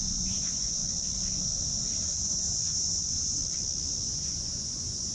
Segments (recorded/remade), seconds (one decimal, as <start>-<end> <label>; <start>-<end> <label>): 0.0-0.8 remade; 0.8-2.2 recorded; 2.2-3.4 remade; 3.4-4.0 recorded; 4.0-5.1 remade